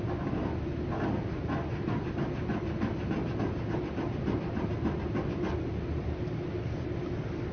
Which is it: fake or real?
fake